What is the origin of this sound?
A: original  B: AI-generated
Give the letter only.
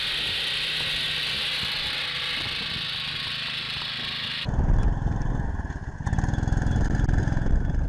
A